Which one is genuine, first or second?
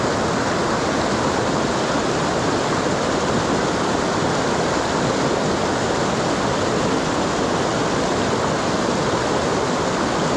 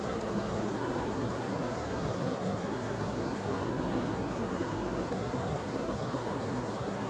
first